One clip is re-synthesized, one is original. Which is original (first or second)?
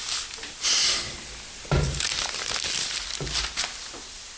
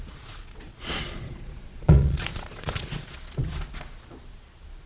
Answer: first